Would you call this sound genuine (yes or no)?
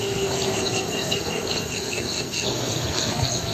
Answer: no